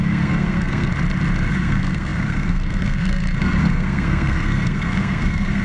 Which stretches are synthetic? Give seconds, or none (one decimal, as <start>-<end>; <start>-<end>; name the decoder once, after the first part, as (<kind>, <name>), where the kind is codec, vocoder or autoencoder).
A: 0.0-0.9 (codec, SNAC); 1.5-5.6